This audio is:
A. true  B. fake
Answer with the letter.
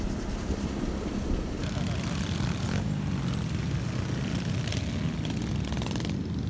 A